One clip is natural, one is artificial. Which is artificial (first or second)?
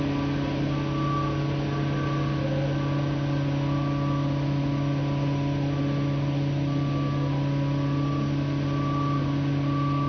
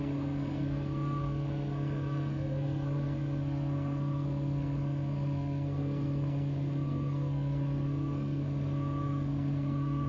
second